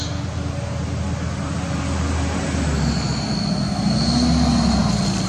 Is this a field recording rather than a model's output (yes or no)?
yes